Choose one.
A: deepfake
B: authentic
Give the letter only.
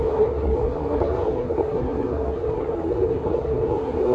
A